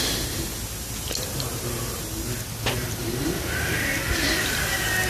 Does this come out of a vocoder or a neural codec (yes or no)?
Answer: no